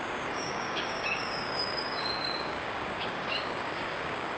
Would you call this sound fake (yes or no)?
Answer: yes